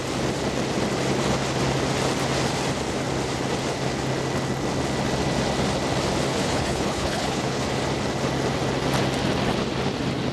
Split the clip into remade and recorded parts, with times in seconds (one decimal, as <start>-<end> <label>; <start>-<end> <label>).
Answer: 0.0-6.3 recorded; 6.3-7.6 remade; 7.6-10.3 recorded